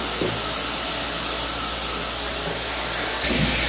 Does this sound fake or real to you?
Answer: real